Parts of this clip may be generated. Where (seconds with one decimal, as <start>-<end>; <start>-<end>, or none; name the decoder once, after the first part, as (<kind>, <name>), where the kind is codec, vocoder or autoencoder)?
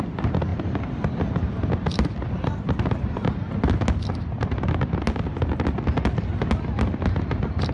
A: 0.5-1.1 (vocoder, BigVGAN v2)